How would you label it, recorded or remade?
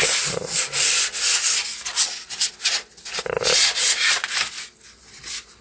recorded